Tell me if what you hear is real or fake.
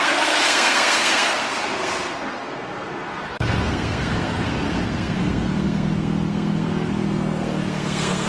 fake